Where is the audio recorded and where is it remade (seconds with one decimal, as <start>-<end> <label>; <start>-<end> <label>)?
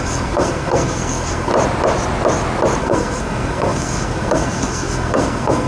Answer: 0.0-1.5 remade; 1.5-2.8 recorded; 2.8-5.7 remade